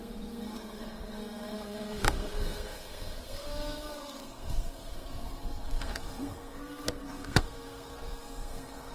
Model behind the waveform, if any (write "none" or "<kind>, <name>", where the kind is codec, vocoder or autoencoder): codec, SNAC